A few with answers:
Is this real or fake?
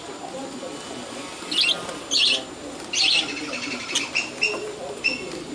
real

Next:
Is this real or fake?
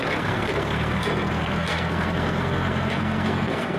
fake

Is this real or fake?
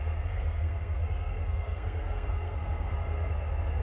fake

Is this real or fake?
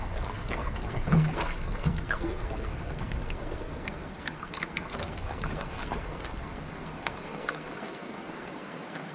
fake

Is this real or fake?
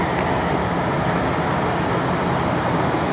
real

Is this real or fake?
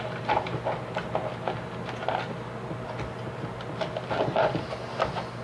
real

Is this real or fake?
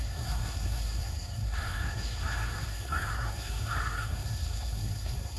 fake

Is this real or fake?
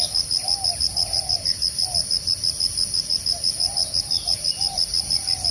real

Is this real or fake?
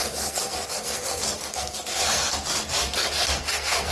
fake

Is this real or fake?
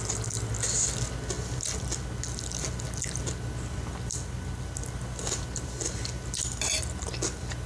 real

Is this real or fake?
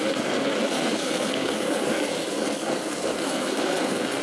fake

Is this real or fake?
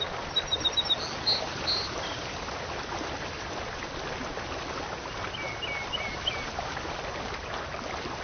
real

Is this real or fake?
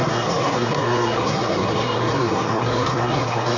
fake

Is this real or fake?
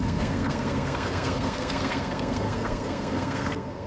fake